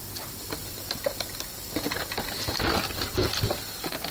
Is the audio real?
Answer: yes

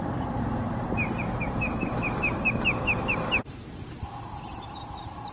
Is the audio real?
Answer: no